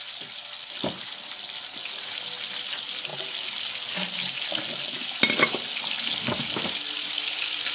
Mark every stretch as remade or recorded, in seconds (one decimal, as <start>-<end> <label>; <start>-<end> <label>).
0.0-3.1 remade; 3.1-4.5 recorded; 4.5-7.7 remade